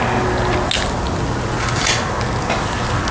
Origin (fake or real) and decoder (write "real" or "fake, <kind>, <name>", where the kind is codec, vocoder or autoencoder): real